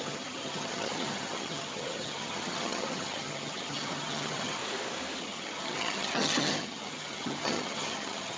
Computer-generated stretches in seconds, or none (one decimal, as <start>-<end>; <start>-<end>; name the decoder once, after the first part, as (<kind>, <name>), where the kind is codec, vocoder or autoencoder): 0.0-4.6 (vocoder, HiFi-GAN); 5.2-8.4